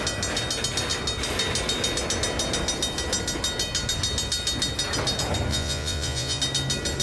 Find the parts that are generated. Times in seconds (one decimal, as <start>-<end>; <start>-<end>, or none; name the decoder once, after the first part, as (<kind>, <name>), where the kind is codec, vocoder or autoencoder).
5.5-6.4 (vocoder, Vocos)